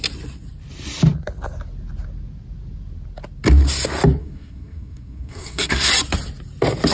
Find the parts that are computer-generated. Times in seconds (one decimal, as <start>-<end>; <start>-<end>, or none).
4.2-5.9

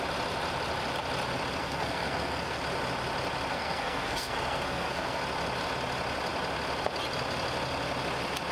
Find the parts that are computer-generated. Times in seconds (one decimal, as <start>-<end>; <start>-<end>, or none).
1.6-2.6; 3.5-5.2

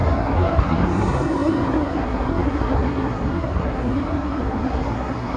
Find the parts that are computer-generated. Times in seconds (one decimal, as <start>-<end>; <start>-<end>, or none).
0.0-5.4

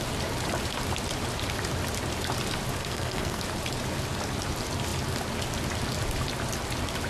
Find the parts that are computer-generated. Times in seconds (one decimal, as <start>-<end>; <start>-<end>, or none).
2.8-3.4

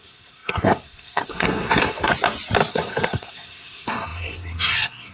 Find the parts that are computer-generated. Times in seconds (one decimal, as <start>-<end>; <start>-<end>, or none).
0.0-2.1; 2.7-5.1